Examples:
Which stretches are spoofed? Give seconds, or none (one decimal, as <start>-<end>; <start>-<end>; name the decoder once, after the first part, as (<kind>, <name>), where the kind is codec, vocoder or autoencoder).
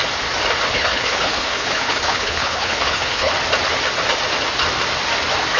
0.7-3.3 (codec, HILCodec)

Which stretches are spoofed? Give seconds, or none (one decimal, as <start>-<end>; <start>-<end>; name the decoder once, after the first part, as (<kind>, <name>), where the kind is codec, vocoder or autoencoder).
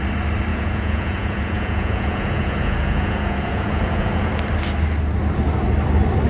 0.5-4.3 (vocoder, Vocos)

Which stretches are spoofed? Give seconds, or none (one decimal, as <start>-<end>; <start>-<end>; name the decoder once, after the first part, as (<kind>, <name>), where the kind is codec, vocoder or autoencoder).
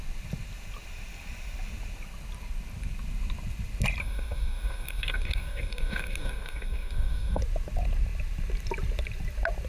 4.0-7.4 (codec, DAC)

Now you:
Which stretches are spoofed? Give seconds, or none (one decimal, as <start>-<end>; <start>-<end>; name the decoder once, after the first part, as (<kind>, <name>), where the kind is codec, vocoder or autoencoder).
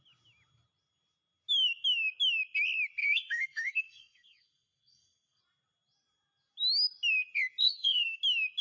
3.0-5.4 (codec, SNAC); 7.6-8.2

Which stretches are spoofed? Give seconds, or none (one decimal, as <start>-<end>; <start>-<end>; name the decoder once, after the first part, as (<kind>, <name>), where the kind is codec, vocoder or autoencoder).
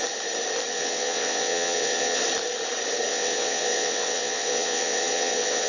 0.7-2.2 (vocoder, WaveNeXt); 3.1-5.7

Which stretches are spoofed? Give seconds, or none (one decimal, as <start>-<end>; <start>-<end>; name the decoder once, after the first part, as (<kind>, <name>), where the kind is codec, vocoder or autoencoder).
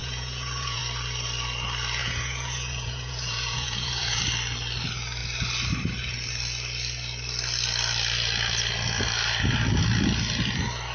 0.0-0.8 (vocoder, Vocos); 2.0-4.2